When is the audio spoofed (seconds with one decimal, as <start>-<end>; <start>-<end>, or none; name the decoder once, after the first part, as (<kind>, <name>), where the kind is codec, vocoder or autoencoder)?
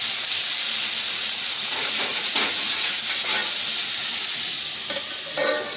1.0-3.0 (vocoder, Vocos)